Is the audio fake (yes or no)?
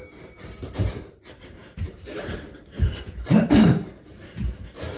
yes